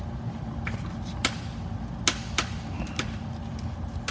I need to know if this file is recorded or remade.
recorded